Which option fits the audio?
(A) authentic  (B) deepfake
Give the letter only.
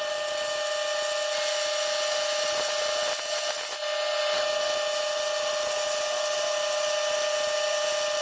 A